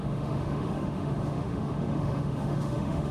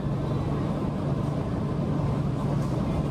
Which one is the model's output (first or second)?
first